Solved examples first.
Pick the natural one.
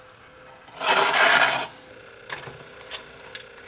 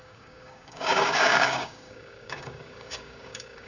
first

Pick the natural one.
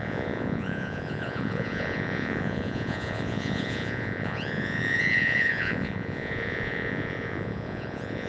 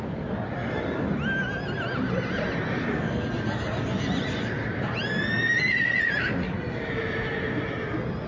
second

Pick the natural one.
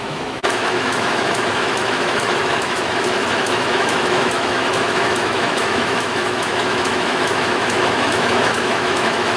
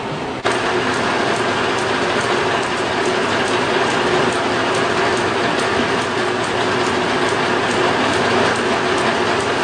second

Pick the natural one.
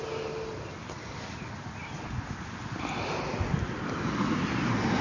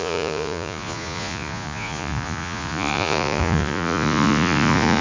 first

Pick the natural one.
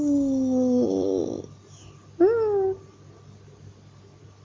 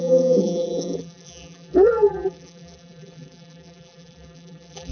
first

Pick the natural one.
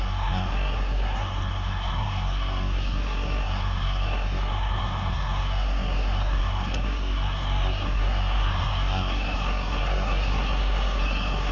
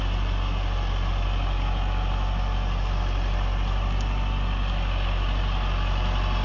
second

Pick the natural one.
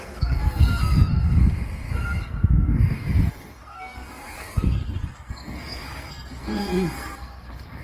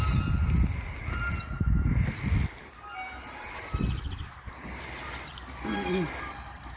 second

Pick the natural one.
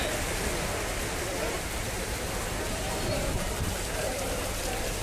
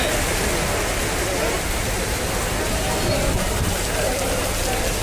second